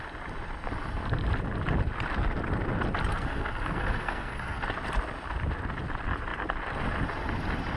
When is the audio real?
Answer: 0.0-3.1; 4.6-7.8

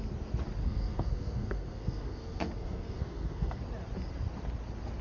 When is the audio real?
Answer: 0.0-0.6; 3.6-5.0

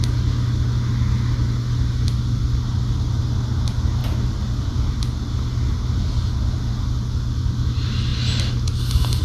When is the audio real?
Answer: 0.0-9.2